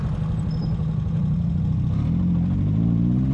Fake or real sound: real